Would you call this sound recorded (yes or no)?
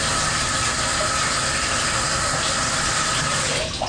yes